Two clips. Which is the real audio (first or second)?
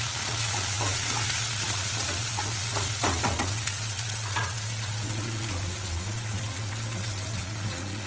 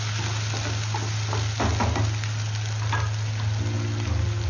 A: second